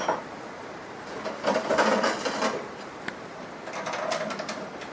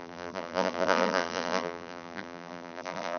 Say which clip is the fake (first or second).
second